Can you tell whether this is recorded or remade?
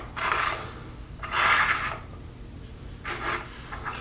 recorded